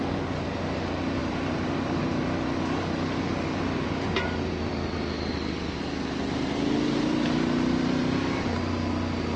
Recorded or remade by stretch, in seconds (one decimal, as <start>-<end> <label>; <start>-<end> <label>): 0.0-9.4 recorded